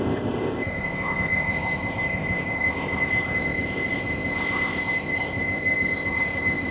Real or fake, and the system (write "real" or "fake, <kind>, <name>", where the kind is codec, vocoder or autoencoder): fake, codec, ZipCodec